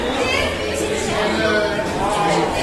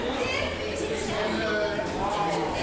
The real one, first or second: first